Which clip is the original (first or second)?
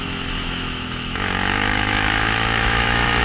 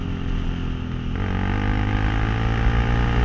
second